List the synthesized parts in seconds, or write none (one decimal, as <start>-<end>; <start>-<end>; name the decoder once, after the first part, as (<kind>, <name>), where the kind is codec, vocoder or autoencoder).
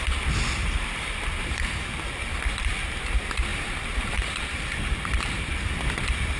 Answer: 0.6-2.0 (vocoder, BigVGAN v2); 3.5-5.8